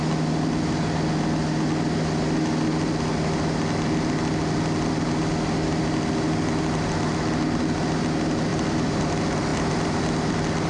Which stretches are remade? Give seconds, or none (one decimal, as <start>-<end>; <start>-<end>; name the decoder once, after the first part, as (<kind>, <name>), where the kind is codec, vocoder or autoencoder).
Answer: 8.5-9.0 (vocoder, BigVGAN v2); 9.5-10.0